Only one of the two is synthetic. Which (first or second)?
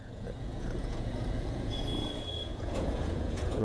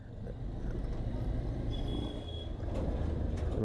first